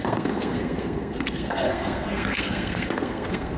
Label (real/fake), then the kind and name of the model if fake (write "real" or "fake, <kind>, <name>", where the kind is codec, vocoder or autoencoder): fake, codec, SNAC